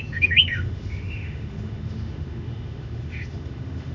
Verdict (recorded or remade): remade